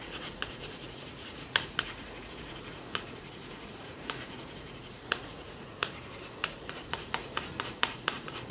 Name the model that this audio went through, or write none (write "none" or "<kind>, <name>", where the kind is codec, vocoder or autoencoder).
vocoder, Vocos